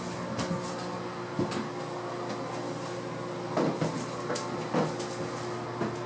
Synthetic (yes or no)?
no